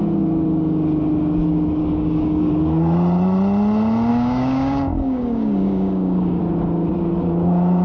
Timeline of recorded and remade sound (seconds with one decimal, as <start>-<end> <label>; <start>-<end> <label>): 0.0-1.8 recorded; 1.8-2.5 remade; 2.5-4.1 recorded; 4.1-6.4 remade; 6.4-7.8 recorded